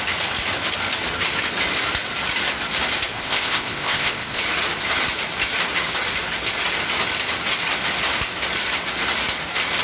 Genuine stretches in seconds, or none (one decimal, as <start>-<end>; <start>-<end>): 0.0-3.1; 4.4-9.8